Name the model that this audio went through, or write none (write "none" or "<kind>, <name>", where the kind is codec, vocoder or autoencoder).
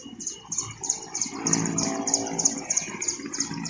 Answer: none